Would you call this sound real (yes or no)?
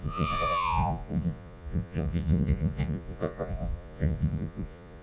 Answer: no